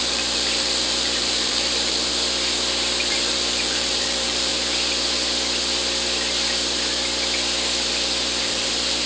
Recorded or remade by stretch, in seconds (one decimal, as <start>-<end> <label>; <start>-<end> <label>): 0.0-2.1 remade; 2.1-3.1 recorded; 3.1-4.5 remade; 4.5-8.4 recorded; 8.4-9.1 remade